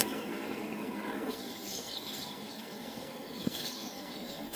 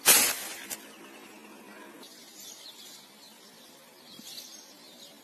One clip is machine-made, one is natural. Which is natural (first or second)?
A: second